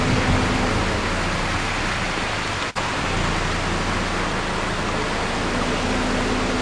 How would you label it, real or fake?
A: real